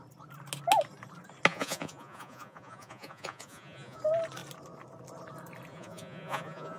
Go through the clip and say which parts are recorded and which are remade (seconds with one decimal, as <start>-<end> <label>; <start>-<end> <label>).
0.0-1.5 recorded; 1.5-4.0 remade; 4.0-5.7 recorded; 5.7-6.8 remade

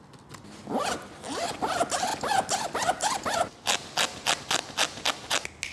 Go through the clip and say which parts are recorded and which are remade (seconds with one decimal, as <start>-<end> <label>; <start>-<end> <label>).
0.0-5.7 recorded